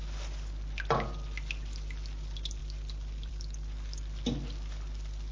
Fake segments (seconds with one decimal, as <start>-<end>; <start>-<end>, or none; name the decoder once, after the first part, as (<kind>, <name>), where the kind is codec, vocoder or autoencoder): none